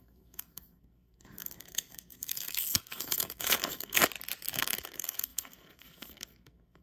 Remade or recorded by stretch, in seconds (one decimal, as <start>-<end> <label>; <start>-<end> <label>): 0.0-4.0 remade; 4.0-4.5 recorded; 4.5-6.8 remade